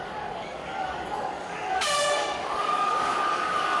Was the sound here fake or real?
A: fake